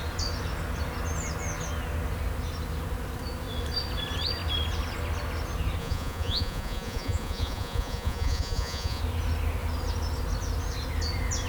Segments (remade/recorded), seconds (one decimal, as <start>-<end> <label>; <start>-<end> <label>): 0.0-5.8 recorded; 5.8-9.0 remade; 9.0-11.5 recorded